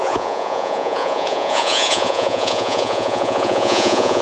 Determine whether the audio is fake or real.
fake